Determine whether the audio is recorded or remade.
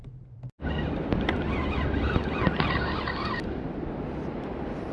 recorded